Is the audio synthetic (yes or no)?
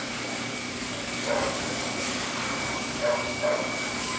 yes